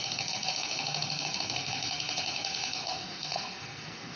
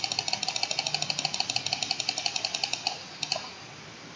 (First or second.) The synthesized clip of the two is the first